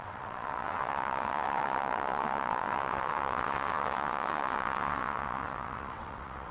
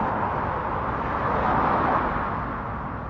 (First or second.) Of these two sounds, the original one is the second